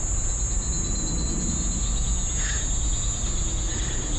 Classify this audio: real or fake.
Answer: real